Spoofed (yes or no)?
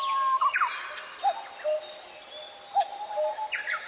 no